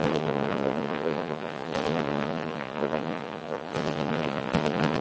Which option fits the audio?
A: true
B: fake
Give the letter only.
B